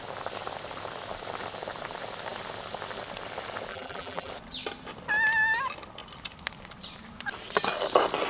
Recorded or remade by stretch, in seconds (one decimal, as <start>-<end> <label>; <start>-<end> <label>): 0.0-3.7 recorded; 3.7-4.3 remade; 4.3-8.3 recorded